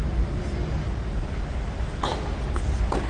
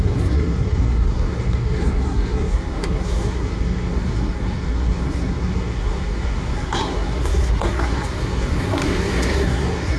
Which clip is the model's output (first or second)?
second